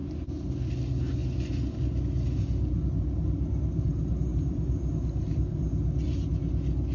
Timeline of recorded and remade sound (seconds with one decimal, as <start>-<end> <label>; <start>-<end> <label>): 0.0-0.7 remade; 0.7-4.3 recorded; 4.3-5.2 remade; 5.2-6.9 recorded